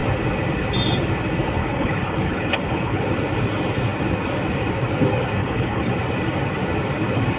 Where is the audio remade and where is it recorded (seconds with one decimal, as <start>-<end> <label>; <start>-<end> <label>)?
0.0-1.6 recorded; 1.6-3.0 remade; 3.0-5.4 recorded; 5.4-5.9 remade; 5.9-7.4 recorded